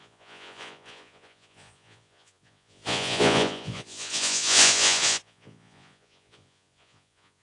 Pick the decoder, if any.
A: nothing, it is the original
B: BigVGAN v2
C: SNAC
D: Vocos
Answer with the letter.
D